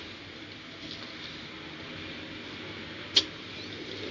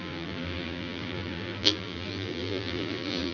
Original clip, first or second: first